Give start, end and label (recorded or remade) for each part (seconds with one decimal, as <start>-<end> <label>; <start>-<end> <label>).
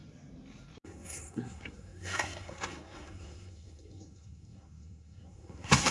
0.0-0.8 recorded; 0.8-5.9 remade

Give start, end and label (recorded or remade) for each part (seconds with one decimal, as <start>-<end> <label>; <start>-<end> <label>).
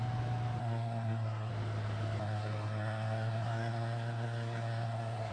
0.0-0.6 recorded; 0.6-1.5 remade; 1.5-2.2 recorded; 2.2-5.3 remade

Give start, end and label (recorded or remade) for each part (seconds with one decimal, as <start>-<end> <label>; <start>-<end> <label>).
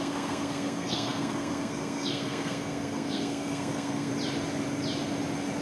0.0-4.1 remade; 4.1-5.6 recorded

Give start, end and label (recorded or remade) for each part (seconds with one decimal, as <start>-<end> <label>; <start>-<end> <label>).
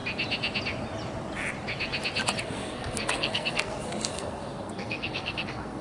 0.0-2.4 recorded; 2.4-5.8 remade